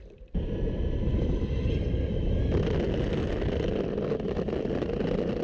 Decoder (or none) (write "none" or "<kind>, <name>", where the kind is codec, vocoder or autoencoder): none